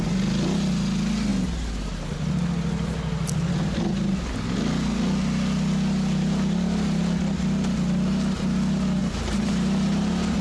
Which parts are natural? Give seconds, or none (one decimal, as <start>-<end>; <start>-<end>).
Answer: 0.0-9.0; 9.5-10.4

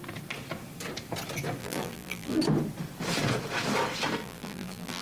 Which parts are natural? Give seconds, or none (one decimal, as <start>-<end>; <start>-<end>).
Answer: 0.0-1.6; 2.4-4.2

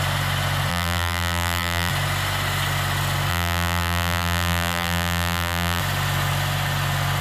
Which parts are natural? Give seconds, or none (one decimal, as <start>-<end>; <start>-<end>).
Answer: 0.0-0.7; 1.9-3.3; 5.8-7.2

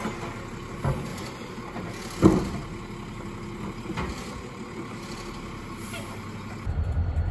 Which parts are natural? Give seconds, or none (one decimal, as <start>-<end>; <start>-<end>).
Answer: 0.0-1.1; 1.9-7.3

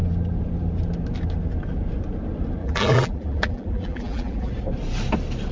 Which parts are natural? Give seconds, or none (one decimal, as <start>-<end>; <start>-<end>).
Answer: 0.0-2.6; 4.5-5.5

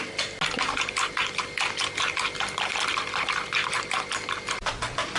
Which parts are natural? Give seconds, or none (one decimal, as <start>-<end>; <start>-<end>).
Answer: 0.0-2.7; 4.7-5.2

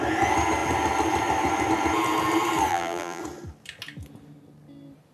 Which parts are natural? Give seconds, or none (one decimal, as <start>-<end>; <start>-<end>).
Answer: 0.0-2.7; 3.2-5.1